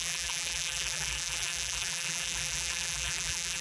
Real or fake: fake